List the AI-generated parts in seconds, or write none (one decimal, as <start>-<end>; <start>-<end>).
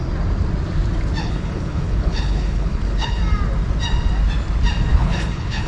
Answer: 1.2-3.2; 4.9-5.7